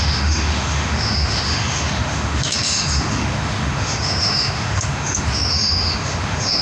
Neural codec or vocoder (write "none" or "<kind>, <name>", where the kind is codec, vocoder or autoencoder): autoencoder, DAC-VAE